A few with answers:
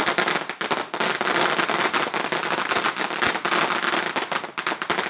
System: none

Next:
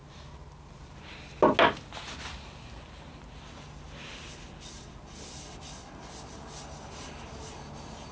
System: none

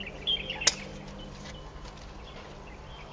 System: none